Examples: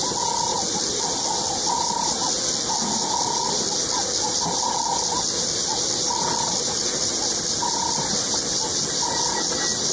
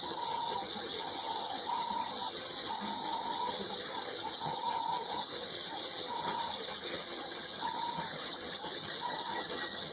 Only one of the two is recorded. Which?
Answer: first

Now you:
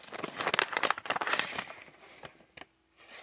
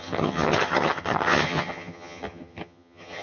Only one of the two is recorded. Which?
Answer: first